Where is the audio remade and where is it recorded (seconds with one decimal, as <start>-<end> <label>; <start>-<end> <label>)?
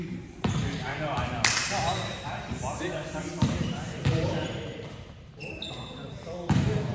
0.0-0.9 remade; 0.9-2.2 recorded; 2.2-6.9 remade